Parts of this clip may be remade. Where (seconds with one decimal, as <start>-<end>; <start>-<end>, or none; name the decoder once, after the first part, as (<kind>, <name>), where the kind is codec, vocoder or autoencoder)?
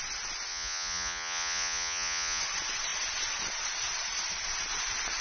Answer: 0.5-2.4 (vocoder, Vocos)